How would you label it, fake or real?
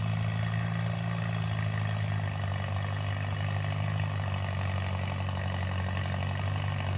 real